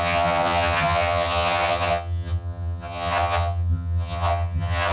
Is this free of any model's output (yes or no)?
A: no